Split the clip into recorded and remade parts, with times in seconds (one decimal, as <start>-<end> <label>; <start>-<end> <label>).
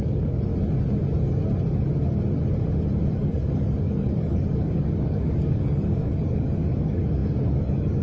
0.0-0.5 remade; 0.5-3.1 recorded; 3.1-8.0 remade